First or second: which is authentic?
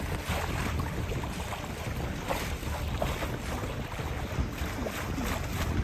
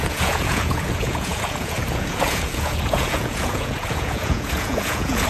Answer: first